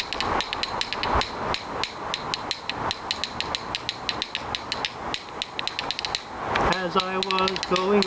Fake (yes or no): no